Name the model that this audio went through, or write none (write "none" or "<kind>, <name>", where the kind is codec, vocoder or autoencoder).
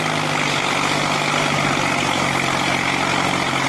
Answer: none